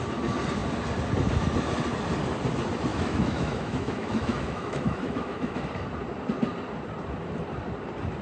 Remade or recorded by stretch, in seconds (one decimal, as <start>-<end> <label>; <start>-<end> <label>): 0.0-2.9 recorded; 2.9-5.7 remade; 5.7-8.2 recorded